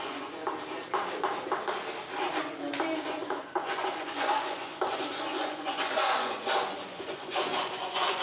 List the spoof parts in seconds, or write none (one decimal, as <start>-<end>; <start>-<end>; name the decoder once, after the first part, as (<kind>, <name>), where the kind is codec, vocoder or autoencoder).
0.0-0.4 (vocoder, Vocos); 3.1-8.2